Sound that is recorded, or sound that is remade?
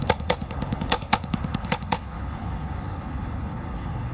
remade